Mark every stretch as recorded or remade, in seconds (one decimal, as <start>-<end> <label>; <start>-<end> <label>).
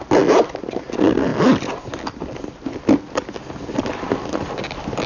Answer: 0.0-5.1 recorded